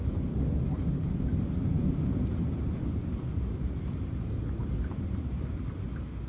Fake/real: real